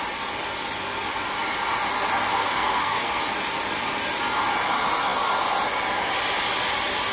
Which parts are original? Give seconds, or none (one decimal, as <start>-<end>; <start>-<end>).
0.0-2.4; 3.2-7.1